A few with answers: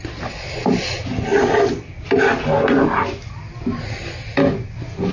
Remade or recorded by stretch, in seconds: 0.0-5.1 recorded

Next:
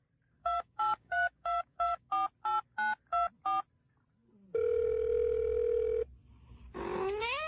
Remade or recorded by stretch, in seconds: 0.0-0.4 recorded; 0.4-2.1 remade; 2.1-7.5 recorded

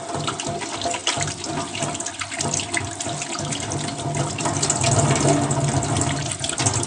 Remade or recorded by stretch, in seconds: 0.0-6.9 recorded

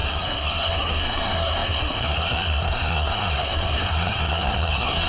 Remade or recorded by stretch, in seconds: 0.0-5.1 remade

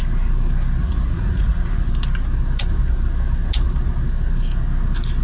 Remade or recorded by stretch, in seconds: 0.0-0.8 recorded; 0.8-1.9 remade; 1.9-5.2 recorded

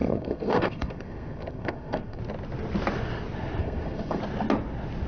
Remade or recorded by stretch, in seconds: 0.0-2.2 remade; 2.2-3.6 recorded; 3.6-4.2 remade; 4.2-5.1 recorded